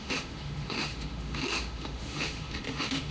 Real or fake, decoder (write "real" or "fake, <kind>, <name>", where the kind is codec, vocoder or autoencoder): fake, autoencoder, DAC-VAE